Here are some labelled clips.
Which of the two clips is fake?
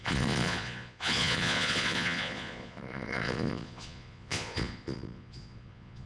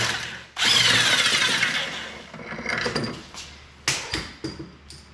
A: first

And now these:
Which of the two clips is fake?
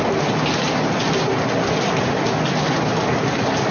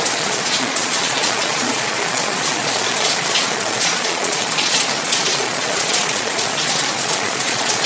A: second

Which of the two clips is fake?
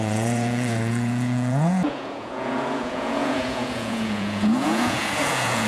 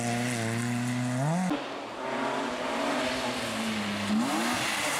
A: first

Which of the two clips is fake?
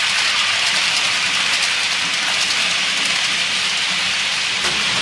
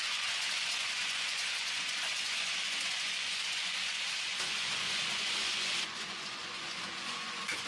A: second